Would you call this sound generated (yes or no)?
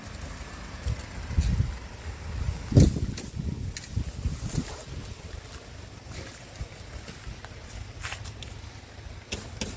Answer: no